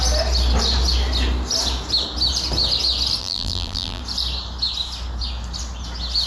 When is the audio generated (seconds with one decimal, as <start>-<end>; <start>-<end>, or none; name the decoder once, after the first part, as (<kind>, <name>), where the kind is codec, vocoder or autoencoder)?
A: 3.2-4.0 (vocoder, BigVGAN v2)